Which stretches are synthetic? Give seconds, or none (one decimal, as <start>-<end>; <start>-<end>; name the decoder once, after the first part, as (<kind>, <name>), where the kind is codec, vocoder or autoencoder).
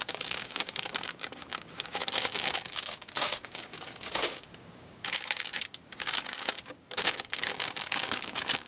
0.0-8.7 (codec, DAC)